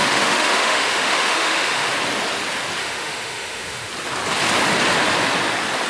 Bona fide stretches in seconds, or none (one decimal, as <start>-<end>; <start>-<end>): 1.9-2.8; 3.9-5.9